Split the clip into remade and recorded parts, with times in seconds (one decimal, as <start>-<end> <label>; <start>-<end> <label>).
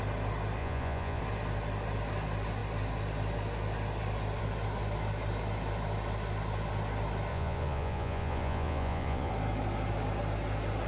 0.0-0.6 recorded; 0.6-1.2 remade; 1.2-7.3 recorded; 7.3-9.3 remade; 9.3-10.9 recorded